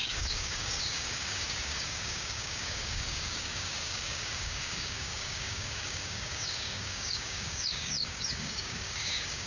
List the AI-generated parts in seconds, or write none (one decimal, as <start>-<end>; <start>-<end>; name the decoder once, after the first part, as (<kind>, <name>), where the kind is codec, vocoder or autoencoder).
0.0-9.5 (codec, DAC)